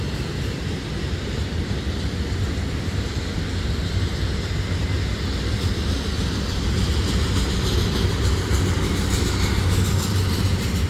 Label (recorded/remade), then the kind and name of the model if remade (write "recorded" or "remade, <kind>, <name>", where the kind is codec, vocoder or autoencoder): recorded